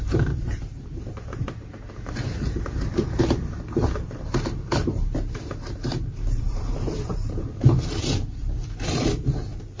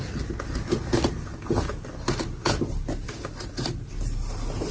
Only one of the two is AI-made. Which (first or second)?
first